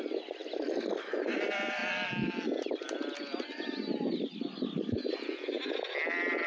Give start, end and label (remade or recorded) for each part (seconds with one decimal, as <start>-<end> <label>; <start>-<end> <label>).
0.0-6.5 recorded